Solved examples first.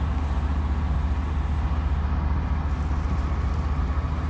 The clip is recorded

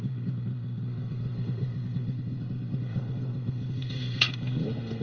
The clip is remade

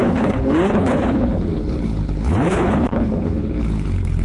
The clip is remade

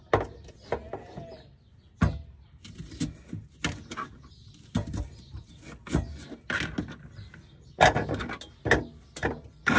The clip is recorded